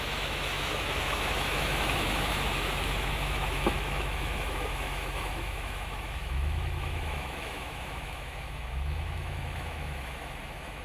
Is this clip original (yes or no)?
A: no